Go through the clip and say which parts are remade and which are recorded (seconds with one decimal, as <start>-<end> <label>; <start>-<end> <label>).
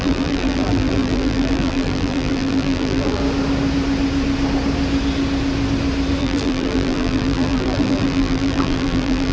0.0-3.2 remade; 3.2-6.2 recorded; 6.2-9.3 remade